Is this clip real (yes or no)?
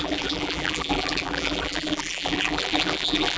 no